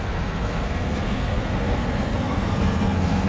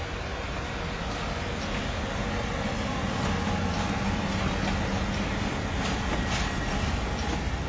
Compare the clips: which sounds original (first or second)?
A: second